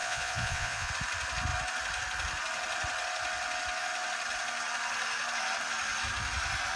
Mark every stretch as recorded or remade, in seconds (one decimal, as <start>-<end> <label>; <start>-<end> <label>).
0.0-0.9 remade; 0.9-6.8 recorded